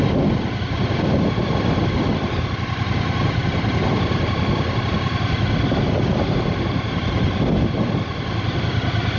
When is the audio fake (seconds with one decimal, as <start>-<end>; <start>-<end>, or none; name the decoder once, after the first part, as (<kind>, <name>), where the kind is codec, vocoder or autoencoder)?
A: none